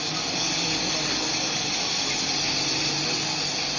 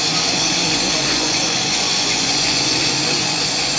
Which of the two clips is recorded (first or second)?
first